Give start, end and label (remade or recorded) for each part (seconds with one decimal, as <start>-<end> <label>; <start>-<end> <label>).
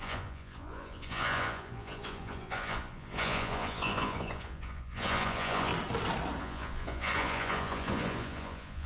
0.0-5.7 remade; 5.7-6.4 recorded; 6.4-8.9 remade